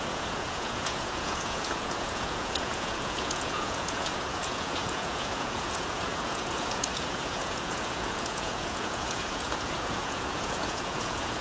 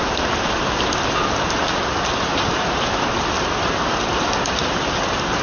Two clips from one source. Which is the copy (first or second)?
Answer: first